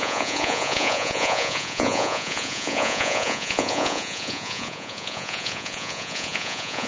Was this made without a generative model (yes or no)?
no